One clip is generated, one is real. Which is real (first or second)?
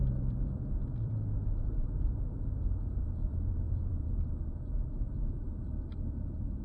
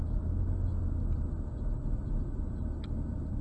second